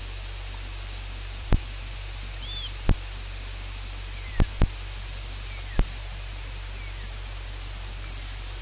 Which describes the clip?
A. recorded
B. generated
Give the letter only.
A